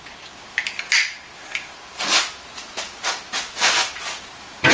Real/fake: real